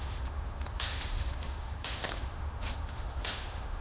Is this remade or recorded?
remade